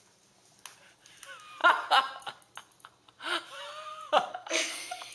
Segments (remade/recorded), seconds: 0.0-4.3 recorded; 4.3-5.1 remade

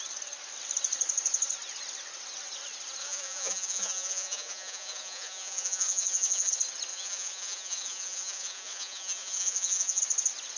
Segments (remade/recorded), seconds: 0.0-3.0 recorded; 3.0-6.5 remade; 6.5-6.9 recorded; 6.9-10.0 remade; 10.0-10.6 recorded

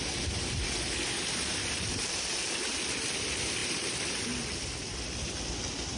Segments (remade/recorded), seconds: 0.0-1.5 recorded; 1.5-2.1 remade; 2.1-3.6 recorded; 3.6-4.2 remade; 4.2-6.0 recorded